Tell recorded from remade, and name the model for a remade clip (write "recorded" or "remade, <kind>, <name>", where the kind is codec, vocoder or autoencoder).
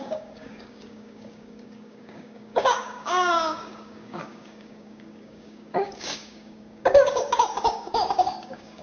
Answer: remade, codec, DAC